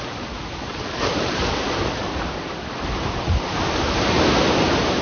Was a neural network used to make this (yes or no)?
no